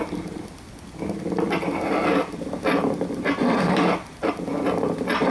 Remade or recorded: recorded